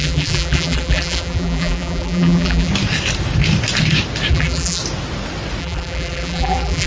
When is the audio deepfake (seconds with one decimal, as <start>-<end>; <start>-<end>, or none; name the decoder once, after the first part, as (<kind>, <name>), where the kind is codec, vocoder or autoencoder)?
0.0-2.7 (vocoder, BigVGAN v2); 4.3-4.8; 5.6-6.9